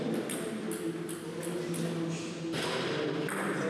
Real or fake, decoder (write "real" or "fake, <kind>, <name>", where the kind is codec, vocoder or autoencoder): real